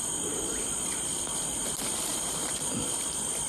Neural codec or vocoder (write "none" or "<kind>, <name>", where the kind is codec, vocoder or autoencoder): none